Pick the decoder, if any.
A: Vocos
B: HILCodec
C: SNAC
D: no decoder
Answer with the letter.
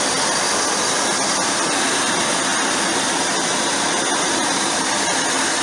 D